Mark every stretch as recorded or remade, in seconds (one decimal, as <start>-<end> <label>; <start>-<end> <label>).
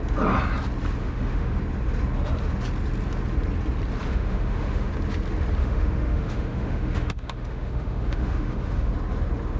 0.0-1.0 recorded; 1.0-1.6 remade; 1.6-4.1 recorded; 4.1-4.9 remade; 4.9-5.6 recorded; 5.6-8.9 remade; 8.9-9.6 recorded